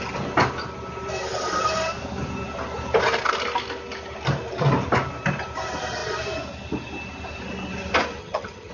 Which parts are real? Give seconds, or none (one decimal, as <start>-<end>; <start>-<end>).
0.0-8.2